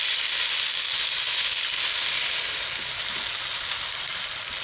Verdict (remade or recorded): recorded